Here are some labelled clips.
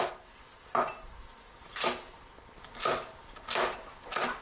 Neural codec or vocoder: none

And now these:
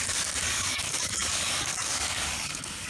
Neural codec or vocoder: codec, DAC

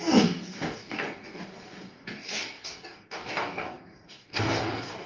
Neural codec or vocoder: codec, DAC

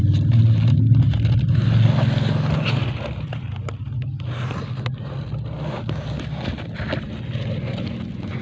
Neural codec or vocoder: none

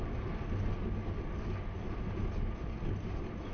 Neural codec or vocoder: none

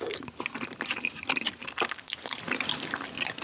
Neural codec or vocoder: none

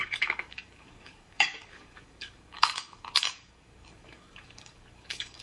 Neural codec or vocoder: codec, DAC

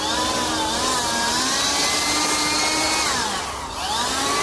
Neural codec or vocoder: none